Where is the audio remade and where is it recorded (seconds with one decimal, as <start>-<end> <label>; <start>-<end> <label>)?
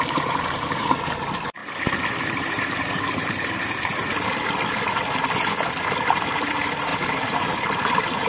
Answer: 0.0-1.6 remade; 1.6-2.2 recorded; 2.2-3.9 remade; 3.9-5.9 recorded; 5.9-8.3 remade